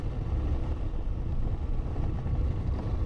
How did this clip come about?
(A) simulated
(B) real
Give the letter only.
B